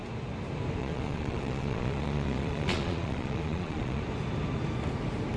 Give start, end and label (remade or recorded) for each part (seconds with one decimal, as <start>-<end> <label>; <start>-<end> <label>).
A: 0.0-0.8 recorded; 0.8-4.0 remade; 4.0-5.4 recorded